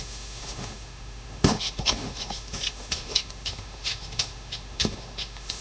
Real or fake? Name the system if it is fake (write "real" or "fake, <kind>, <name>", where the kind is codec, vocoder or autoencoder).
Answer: fake, autoencoder, DAC-VAE